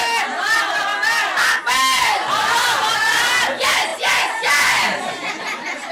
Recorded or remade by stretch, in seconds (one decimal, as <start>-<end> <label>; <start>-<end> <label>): 0.0-0.9 remade; 0.9-1.6 recorded; 1.6-3.9 remade; 3.9-5.3 recorded; 5.3-5.9 remade

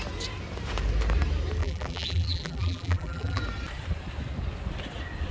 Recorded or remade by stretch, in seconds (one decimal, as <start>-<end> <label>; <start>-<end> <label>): 0.0-1.6 recorded; 1.6-3.4 remade; 3.4-5.3 recorded

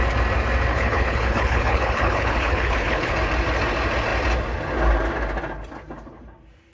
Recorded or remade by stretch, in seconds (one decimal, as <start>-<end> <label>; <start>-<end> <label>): 0.0-0.7 recorded; 0.7-3.1 remade; 3.1-6.7 recorded

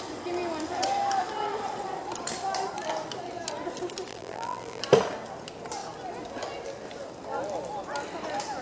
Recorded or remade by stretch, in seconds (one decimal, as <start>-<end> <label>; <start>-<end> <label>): 0.0-4.1 recorded; 4.1-4.8 remade; 4.8-8.6 recorded

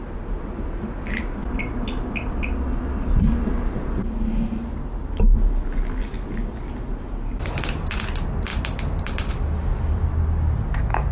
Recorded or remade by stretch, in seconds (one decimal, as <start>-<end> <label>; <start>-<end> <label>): 0.0-11.1 recorded